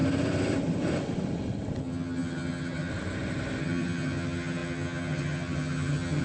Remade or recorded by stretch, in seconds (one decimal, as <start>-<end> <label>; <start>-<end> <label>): 0.0-1.8 recorded; 1.8-2.9 remade; 2.9-3.6 recorded; 3.6-6.2 remade